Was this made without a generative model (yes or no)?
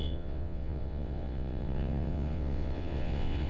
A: no